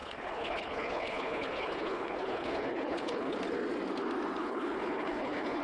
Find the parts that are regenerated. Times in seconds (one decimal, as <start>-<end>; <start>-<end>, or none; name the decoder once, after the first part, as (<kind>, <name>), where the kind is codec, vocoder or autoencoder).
0.0-3.4 (codec, HILCodec); 4.4-5.6